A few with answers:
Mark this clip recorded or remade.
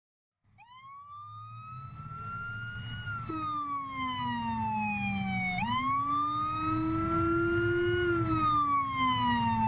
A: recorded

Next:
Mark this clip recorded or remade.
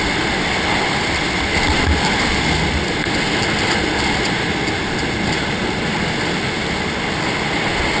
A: recorded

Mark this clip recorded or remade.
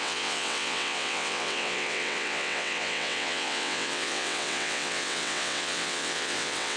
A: remade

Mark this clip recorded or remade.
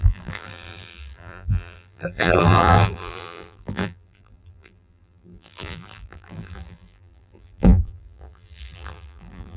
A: remade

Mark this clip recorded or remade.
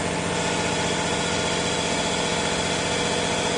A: recorded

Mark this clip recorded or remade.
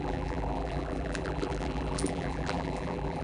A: remade